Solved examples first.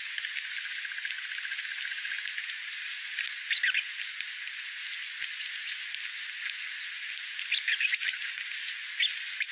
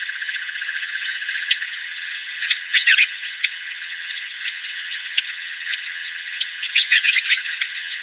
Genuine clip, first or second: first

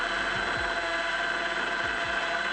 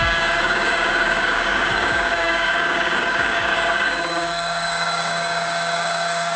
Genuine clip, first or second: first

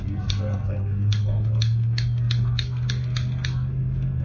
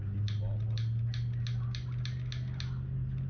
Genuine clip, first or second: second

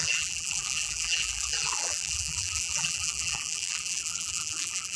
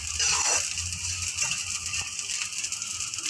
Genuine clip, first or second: second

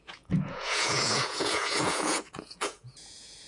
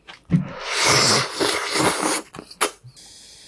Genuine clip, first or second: second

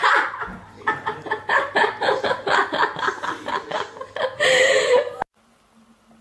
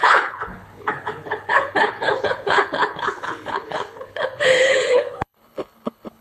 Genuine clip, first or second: first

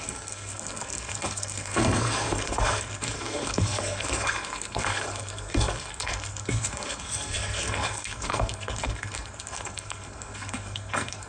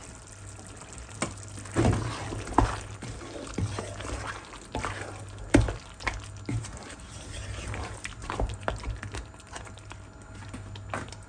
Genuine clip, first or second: second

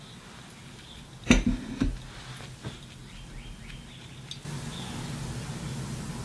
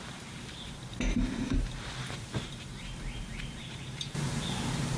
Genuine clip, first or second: first